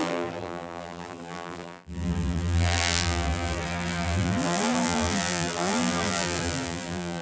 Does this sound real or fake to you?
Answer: fake